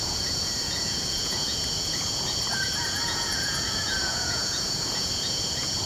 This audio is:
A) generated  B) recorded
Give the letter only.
A